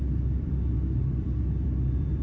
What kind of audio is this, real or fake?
fake